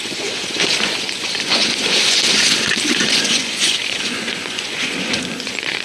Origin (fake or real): fake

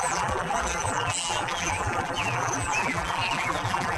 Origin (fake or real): fake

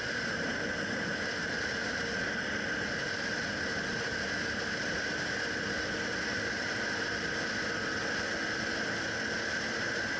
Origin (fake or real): real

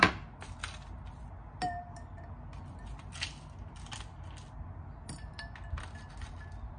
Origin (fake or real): real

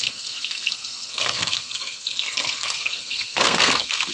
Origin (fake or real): fake